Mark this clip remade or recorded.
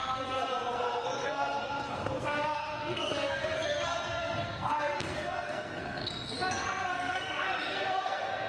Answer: remade